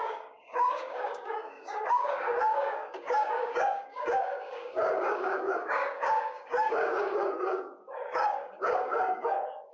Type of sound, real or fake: fake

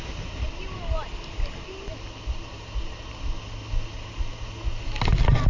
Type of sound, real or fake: real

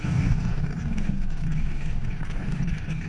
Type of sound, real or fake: fake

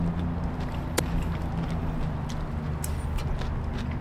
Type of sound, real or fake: real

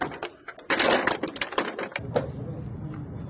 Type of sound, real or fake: real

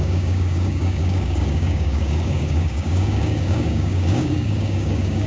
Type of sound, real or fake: fake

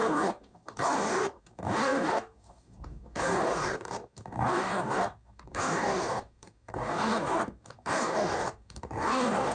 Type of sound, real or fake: fake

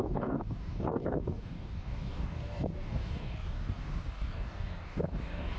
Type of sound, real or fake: fake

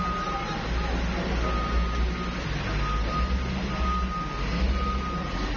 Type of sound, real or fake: real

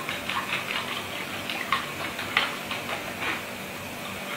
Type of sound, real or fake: real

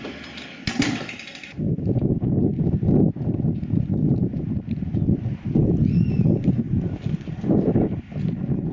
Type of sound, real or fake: real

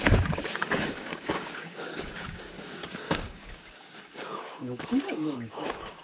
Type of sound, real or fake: fake